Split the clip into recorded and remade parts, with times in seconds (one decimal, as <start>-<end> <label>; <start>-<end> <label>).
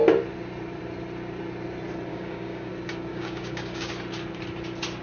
0.0-2.1 recorded; 2.1-2.7 remade; 2.7-3.1 recorded; 3.1-3.9 remade; 3.9-5.0 recorded